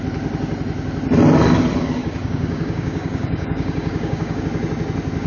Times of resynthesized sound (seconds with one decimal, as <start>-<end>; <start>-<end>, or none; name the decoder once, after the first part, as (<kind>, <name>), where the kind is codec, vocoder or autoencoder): 2.0-4.4 (codec, DAC)

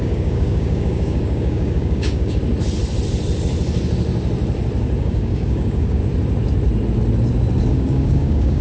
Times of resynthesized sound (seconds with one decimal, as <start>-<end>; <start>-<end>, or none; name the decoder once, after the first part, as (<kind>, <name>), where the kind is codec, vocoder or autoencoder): 0.0-2.4 (codec, DAC); 5.0-6.0; 7.7-8.6

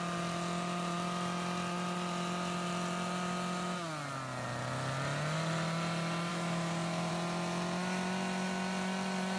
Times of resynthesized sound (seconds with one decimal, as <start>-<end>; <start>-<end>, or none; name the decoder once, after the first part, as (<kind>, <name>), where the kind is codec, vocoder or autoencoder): 6.3-7.1 (codec, DAC)

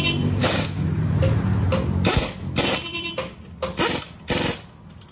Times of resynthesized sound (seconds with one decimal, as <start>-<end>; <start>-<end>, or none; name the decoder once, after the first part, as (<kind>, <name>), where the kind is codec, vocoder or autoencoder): 0.4-1.0 (codec, DAC)

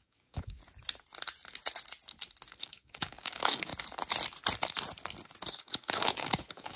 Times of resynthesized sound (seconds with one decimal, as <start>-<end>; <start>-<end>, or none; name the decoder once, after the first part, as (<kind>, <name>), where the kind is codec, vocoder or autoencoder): 0.0-0.6 (codec, DAC); 2.6-3.7; 5.5-6.8

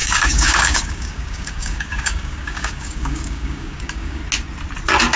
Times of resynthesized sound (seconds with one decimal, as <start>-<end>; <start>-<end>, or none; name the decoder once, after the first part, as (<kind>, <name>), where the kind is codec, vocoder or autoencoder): 0.0-4.2 (codec, DAC)

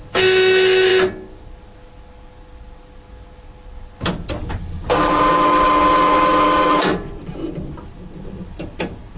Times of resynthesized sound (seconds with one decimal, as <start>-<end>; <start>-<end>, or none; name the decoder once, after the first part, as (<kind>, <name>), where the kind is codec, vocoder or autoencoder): none

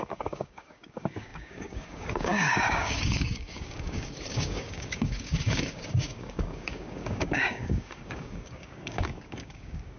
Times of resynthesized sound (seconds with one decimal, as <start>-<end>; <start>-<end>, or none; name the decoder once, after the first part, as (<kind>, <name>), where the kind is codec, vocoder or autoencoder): 0.0-10.0 (codec, DAC)